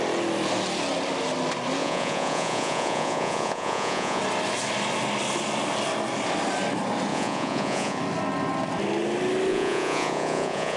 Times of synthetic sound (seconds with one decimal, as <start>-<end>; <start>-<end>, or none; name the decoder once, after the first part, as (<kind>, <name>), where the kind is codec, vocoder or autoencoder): 1.8-4.2 (vocoder, Vocos); 7.1-8.0; 9.5-10.8